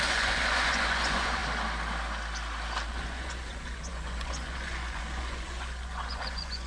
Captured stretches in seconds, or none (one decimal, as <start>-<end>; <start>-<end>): 1.4-2.9